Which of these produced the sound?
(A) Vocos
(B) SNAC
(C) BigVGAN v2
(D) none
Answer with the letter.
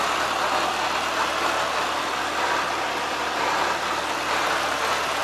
D